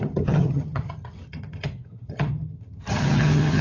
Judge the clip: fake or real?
fake